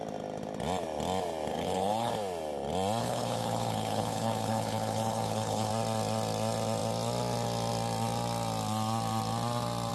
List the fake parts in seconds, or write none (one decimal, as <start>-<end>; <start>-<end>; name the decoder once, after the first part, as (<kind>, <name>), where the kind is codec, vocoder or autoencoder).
1.5-2.1 (codec, HILCodec); 3.0-5.7